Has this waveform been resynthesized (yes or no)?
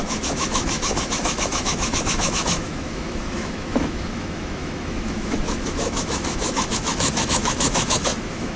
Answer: yes